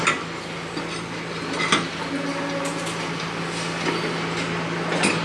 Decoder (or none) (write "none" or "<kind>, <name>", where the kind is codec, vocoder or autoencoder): none